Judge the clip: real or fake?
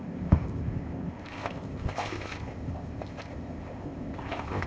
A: fake